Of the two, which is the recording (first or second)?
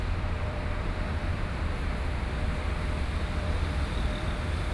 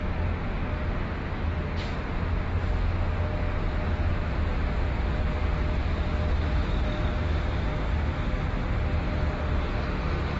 second